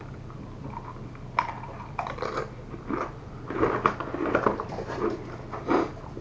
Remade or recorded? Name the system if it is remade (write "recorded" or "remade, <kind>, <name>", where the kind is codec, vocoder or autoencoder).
recorded